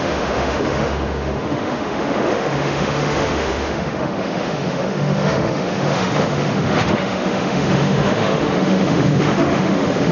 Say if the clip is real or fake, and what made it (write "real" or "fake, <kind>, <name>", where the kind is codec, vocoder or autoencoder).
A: fake, autoencoder, DAC-VAE